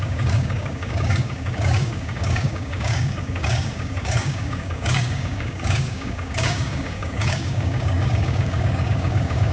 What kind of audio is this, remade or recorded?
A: remade